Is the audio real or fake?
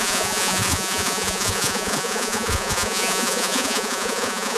fake